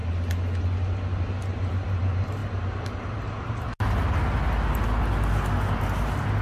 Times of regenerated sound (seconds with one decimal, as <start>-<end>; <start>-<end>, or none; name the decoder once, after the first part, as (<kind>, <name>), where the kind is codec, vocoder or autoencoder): none